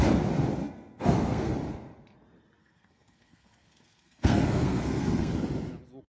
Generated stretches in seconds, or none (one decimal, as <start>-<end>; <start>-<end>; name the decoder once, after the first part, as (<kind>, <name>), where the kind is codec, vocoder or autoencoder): 0.6-1.5 (codec, SNAC); 2.6-5.3